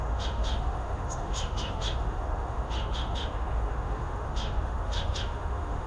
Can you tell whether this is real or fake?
fake